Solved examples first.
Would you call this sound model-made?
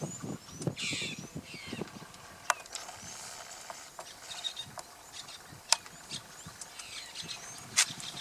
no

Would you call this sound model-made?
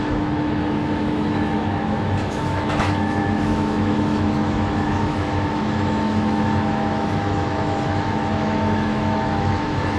yes